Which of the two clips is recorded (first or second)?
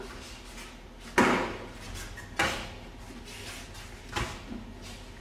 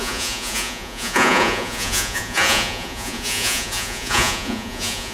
first